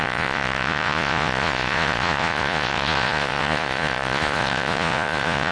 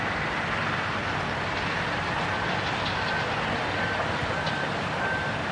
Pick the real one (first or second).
second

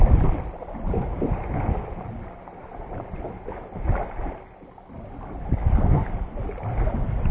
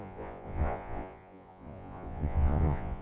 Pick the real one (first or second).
first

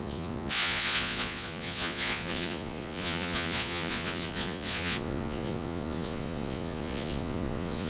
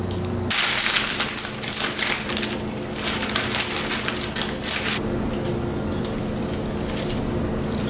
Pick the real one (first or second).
second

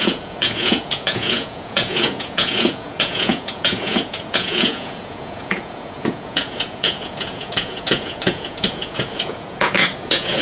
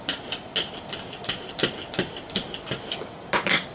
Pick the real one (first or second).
second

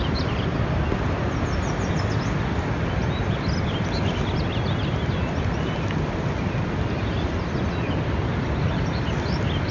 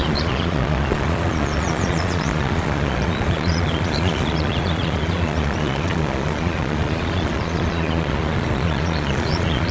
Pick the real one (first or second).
first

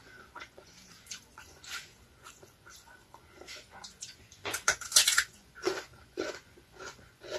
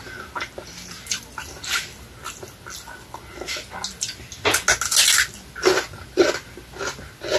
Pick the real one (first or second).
second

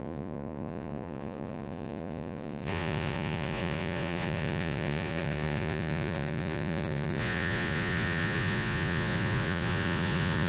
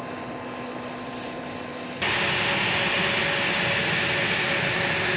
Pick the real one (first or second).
second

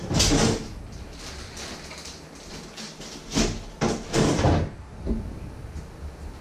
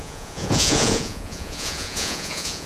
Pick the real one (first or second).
first